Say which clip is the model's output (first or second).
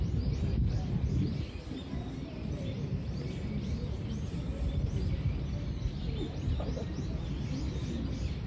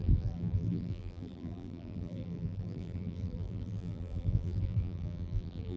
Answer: second